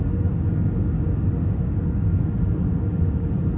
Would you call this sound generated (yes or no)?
yes